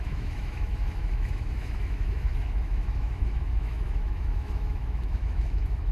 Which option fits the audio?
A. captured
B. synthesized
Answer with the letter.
B